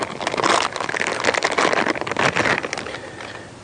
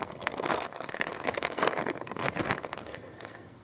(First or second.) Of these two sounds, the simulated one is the second